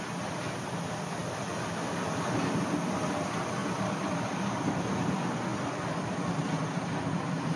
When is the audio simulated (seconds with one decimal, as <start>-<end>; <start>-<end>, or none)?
none